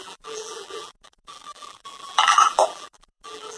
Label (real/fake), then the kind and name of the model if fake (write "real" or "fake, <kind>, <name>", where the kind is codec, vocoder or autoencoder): fake, vocoder, BigVGAN v2